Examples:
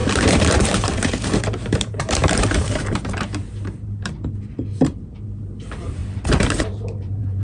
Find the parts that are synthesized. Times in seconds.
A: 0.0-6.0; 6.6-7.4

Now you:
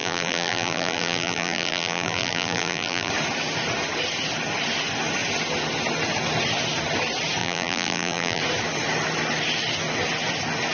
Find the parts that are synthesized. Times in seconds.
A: 0.0-3.1; 7.4-8.4

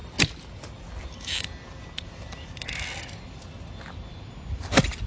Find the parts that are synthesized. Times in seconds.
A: none

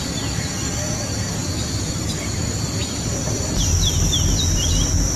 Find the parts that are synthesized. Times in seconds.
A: 1.1-2.4

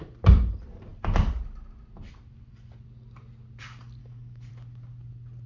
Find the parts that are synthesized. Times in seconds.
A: 4.0-4.5